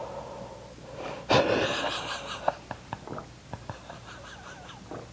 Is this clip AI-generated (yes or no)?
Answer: no